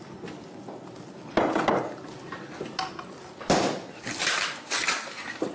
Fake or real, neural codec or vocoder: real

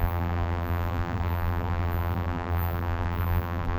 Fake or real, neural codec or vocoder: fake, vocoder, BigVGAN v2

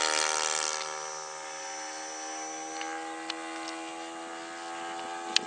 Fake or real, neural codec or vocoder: real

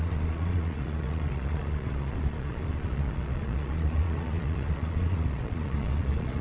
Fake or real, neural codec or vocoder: fake, vocoder, Vocos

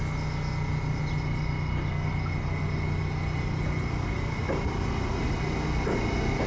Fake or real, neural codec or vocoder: real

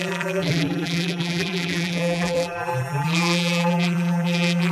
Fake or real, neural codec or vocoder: fake, vocoder, BigVGAN v2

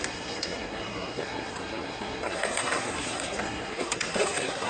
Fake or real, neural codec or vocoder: fake, codec, SNAC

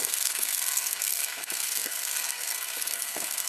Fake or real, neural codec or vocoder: fake, codec, SNAC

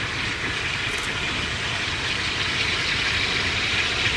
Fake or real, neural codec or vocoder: real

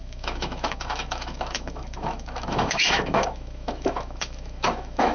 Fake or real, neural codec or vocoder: fake, autoencoder, DAC-VAE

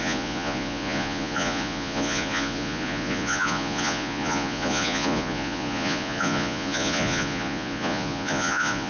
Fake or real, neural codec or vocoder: fake, vocoder, Vocos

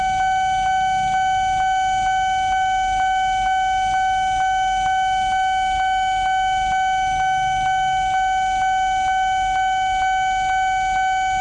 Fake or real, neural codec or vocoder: real